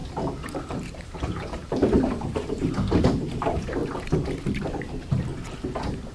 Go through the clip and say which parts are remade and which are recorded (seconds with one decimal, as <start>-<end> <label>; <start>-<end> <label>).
0.0-0.6 recorded; 0.6-3.8 remade; 3.8-4.5 recorded; 4.5-5.3 remade; 5.3-6.1 recorded